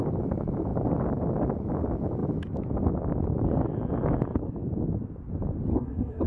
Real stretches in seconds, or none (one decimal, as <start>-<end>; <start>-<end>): 0.0-5.7